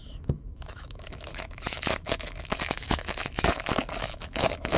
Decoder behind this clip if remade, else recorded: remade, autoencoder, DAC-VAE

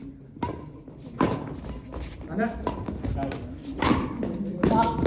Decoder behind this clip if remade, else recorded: recorded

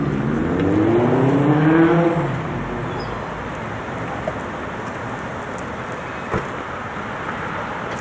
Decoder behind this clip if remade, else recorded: recorded